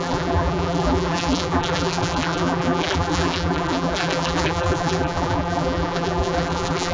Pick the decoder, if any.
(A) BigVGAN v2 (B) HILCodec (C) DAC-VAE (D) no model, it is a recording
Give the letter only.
A